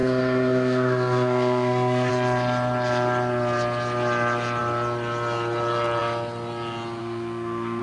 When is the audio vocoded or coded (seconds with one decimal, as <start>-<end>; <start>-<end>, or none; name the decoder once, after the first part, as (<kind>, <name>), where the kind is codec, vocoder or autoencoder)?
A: 0.0-2.1 (codec, SNAC); 7.0-7.8